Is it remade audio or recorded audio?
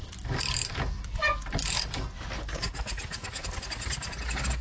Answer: recorded